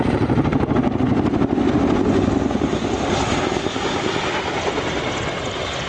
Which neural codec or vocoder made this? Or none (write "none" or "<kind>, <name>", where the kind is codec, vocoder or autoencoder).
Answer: none